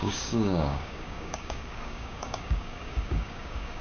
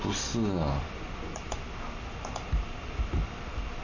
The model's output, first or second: first